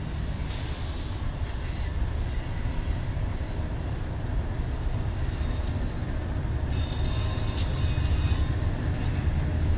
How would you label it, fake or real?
real